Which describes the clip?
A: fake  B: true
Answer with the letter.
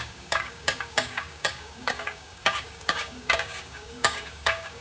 A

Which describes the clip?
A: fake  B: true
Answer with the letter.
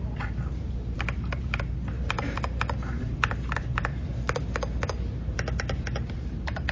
A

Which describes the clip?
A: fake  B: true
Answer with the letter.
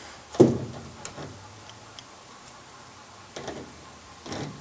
B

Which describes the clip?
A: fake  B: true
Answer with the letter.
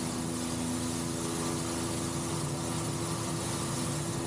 B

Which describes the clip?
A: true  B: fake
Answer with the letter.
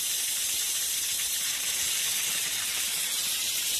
B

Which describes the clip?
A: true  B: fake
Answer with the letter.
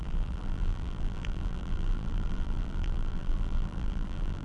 B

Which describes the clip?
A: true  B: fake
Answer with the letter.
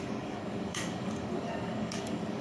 B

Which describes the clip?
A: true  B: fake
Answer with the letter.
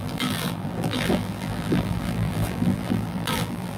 B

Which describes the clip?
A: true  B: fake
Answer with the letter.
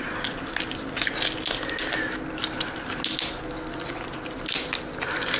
A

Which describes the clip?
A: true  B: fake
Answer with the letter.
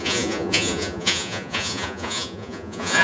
B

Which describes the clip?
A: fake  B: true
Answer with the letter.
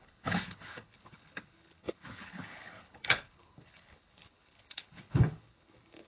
A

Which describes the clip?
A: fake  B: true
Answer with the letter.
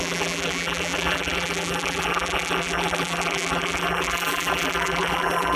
A